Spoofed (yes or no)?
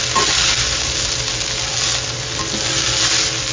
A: no